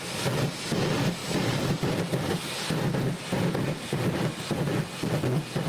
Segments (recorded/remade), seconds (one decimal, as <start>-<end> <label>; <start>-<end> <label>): 0.0-1.2 recorded; 1.2-4.6 remade; 4.6-5.7 recorded